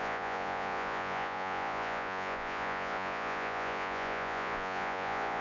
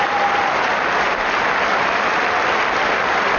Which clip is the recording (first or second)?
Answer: second